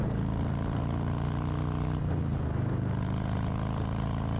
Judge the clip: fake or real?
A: real